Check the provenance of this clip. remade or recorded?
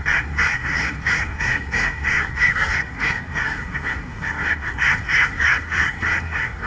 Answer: remade